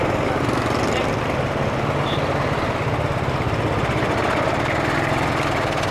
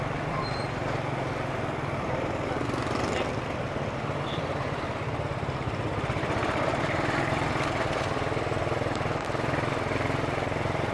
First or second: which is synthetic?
second